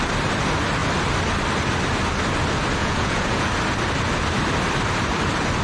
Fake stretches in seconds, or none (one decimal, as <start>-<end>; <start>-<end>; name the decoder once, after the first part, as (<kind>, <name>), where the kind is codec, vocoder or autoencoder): 2.8-3.5 (vocoder, Vocos)